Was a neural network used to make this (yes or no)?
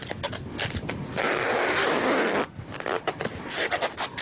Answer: no